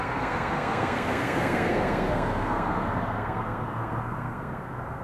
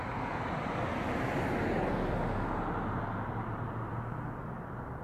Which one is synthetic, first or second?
first